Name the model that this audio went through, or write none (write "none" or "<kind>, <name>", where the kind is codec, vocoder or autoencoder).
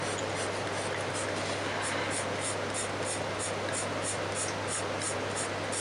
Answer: none